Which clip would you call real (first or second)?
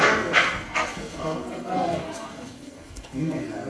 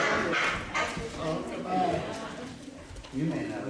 second